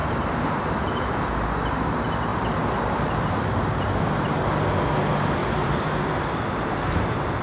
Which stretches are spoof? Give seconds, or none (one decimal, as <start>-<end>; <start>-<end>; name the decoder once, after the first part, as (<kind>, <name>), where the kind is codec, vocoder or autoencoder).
0.0-1.1 (vocoder, BigVGAN v2); 2.3-3.9; 5.4-6.4